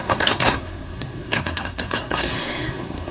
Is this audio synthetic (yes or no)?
yes